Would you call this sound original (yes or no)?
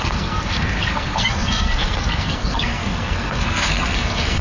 no